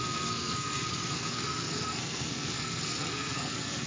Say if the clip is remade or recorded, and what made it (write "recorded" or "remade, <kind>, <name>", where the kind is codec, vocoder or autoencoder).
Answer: remade, codec, SNAC